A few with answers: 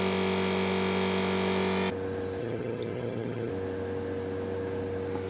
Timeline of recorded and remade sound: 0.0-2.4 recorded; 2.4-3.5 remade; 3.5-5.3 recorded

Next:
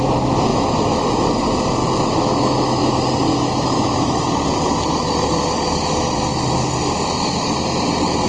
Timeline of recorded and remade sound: 0.0-0.5 recorded; 0.5-1.2 remade; 1.2-1.8 recorded; 1.8-2.9 remade; 2.9-3.3 recorded; 3.3-4.3 remade; 4.3-8.3 recorded

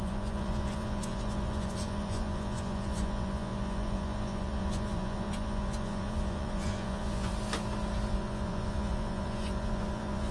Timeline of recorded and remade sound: 0.0-7.3 remade; 7.3-8.1 recorded; 8.1-10.3 remade

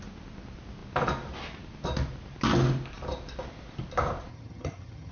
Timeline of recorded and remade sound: 0.0-4.3 recorded; 4.3-5.1 remade

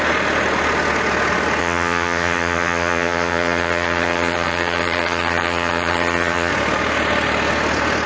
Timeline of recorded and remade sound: 0.0-1.6 recorded; 1.6-6.5 remade; 6.5-8.1 recorded

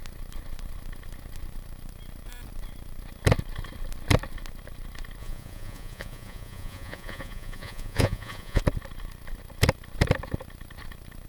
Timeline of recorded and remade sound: 0.0-5.2 recorded; 5.2-8.6 remade; 8.6-11.3 recorded

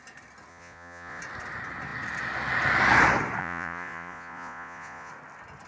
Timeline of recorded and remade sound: 0.0-0.5 recorded; 0.5-1.2 remade; 1.2-3.4 recorded; 3.4-5.1 remade; 5.1-5.7 recorded